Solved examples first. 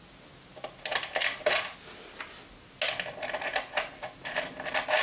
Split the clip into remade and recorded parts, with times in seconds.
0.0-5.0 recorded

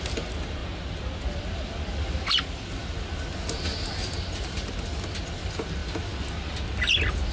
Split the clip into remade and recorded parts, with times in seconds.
0.0-7.3 recorded

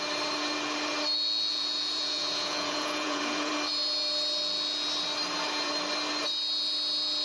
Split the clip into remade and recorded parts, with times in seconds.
0.0-1.5 recorded; 1.5-3.5 remade; 3.5-7.2 recorded

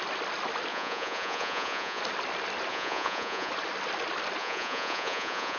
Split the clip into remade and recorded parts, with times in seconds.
0.0-0.7 recorded; 0.7-2.0 remade; 2.0-2.7 recorded; 2.7-3.5 remade; 3.5-4.4 recorded; 4.4-5.6 remade

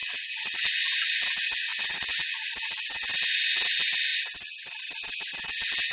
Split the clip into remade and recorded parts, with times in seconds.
0.0-0.8 remade; 0.8-1.7 recorded; 1.7-2.4 remade; 2.4-5.9 recorded

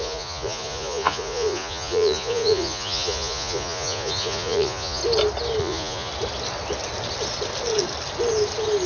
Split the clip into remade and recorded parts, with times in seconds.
0.0-5.0 remade; 5.0-5.6 recorded; 5.6-6.1 remade; 6.1-8.9 recorded

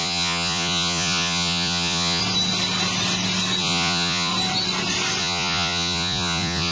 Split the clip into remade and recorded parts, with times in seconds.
0.0-2.2 remade; 2.2-3.6 recorded; 3.6-4.3 remade; 4.3-5.2 recorded; 5.2-6.7 remade